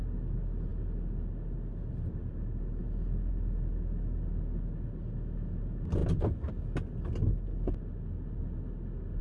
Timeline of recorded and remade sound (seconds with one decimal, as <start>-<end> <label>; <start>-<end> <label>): 0.0-9.2 recorded

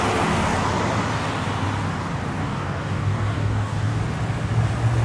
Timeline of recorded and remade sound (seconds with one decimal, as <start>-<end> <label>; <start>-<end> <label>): 0.0-2.4 recorded; 2.4-4.0 remade; 4.0-5.0 recorded

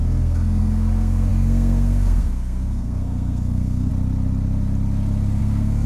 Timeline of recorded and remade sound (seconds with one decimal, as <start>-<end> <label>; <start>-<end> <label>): 0.0-3.9 remade; 3.9-5.4 recorded; 5.4-5.9 remade

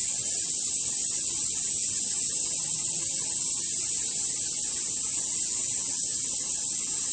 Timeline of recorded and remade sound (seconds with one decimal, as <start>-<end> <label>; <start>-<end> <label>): 0.0-7.1 recorded